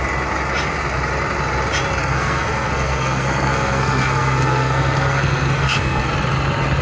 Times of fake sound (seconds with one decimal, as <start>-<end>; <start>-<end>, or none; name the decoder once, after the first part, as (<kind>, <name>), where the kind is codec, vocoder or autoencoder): 2.0-6.1 (codec, SNAC)